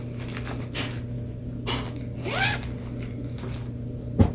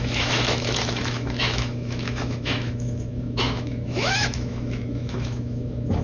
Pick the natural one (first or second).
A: first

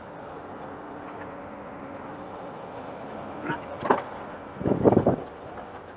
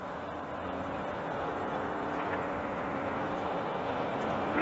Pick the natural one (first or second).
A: second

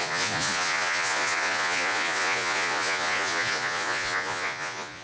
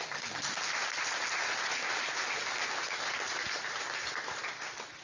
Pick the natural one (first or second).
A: second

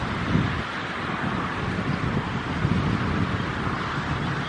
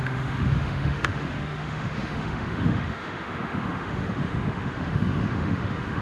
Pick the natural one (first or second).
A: first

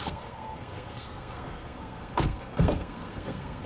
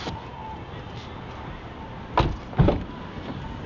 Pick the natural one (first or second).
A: second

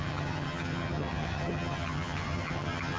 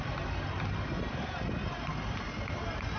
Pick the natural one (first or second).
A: second